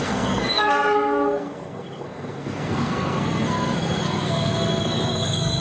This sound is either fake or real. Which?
fake